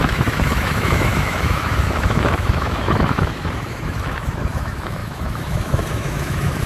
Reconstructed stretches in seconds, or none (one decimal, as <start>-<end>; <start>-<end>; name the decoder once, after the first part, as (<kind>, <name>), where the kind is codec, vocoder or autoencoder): 0.0-6.7 (autoencoder, DAC-VAE)